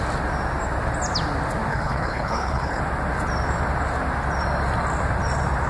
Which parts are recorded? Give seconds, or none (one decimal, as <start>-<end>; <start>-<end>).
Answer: 0.0-1.7; 2.8-5.7